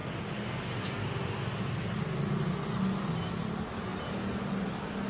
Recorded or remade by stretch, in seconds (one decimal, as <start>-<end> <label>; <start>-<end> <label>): 0.0-5.1 recorded